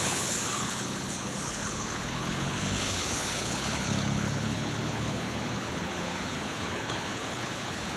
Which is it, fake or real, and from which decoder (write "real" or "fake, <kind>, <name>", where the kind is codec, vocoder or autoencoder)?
fake, codec, HILCodec